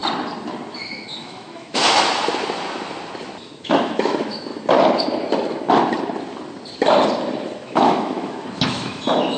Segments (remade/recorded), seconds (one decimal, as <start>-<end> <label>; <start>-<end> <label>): 0.0-0.7 recorded; 0.7-1.8 remade; 1.8-3.4 recorded; 3.4-4.5 remade; 4.5-7.6 recorded; 7.6-9.4 remade